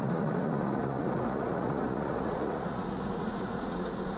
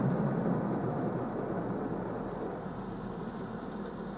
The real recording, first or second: second